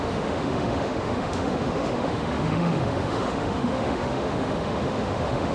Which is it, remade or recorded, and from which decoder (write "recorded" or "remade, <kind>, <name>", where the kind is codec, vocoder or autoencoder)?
remade, autoencoder, DAC-VAE